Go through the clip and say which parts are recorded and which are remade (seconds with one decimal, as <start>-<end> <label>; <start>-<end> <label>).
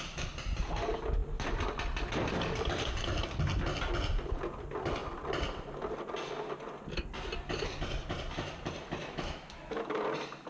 0.0-9.0 recorded; 9.0-10.0 remade; 10.0-10.5 recorded